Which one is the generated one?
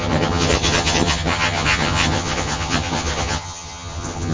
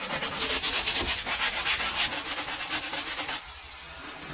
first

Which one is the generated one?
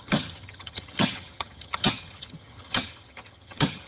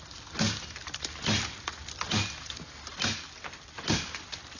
first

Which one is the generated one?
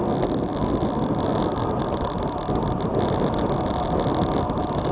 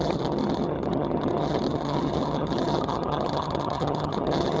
second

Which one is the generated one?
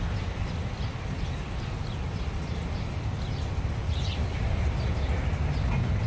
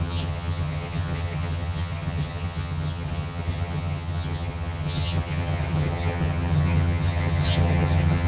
second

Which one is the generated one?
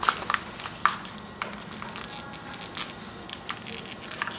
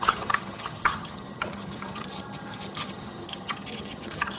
second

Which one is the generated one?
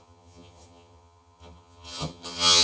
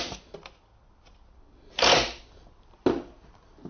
first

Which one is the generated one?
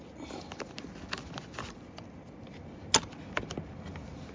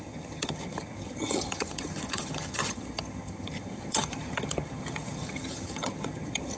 second